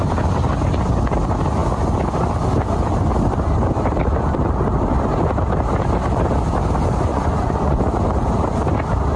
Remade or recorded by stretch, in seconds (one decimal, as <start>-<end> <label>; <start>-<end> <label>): 0.0-7.1 recorded; 7.1-7.8 remade; 7.8-9.2 recorded